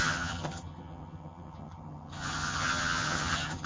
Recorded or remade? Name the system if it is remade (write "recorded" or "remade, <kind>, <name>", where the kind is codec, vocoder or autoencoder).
remade, vocoder, HiFi-GAN